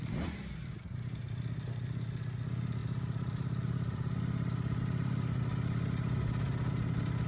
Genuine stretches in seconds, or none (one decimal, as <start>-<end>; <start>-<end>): 0.0-2.8; 5.4-7.3